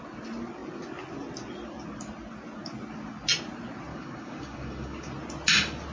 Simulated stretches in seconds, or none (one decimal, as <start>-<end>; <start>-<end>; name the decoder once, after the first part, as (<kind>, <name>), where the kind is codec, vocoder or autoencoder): 3.9-5.1 (codec, DAC)